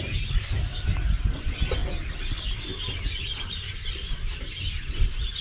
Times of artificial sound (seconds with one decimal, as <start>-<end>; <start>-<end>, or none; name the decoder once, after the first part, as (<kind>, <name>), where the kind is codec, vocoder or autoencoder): none